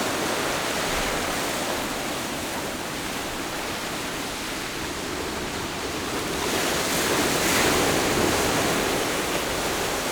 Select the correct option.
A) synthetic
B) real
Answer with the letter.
B